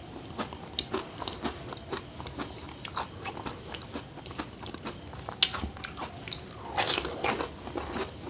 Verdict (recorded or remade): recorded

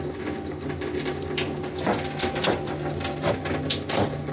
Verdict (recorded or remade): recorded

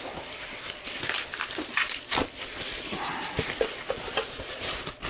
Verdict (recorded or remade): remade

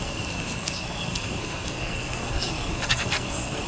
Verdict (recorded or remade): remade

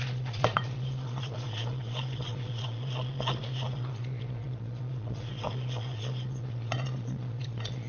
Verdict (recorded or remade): remade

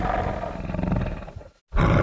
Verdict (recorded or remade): recorded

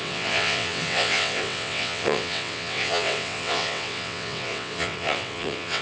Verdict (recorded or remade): remade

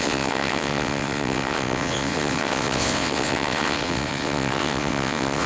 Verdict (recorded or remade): remade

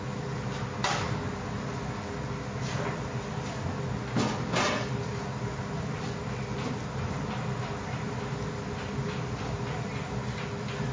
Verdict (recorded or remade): recorded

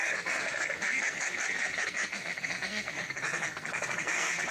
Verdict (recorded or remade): remade